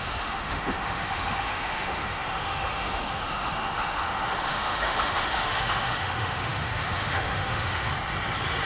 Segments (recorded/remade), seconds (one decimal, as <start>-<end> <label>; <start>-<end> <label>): 0.0-7.9 remade; 7.9-8.7 recorded